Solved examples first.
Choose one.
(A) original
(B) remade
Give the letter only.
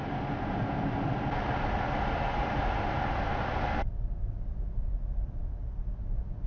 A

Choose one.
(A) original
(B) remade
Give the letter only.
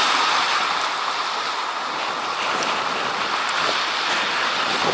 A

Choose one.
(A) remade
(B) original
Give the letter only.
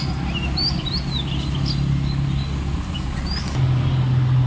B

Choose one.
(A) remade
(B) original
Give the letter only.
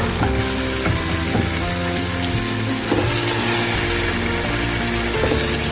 B